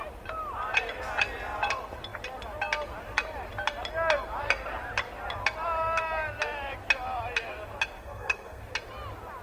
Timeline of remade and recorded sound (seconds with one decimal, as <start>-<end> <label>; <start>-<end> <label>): 0.0-8.0 recorded; 8.0-8.6 remade; 8.6-9.4 recorded